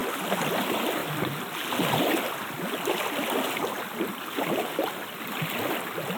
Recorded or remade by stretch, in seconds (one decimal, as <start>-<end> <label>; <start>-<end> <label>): 0.0-6.2 recorded